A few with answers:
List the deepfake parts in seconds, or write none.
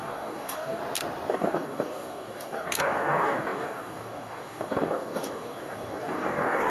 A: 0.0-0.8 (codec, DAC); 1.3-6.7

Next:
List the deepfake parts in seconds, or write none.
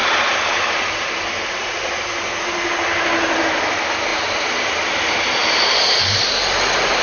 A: none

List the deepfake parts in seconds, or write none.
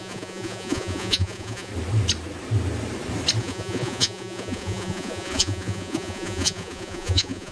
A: 0.0-1.7 (vocoder, Vocos); 3.4-7.5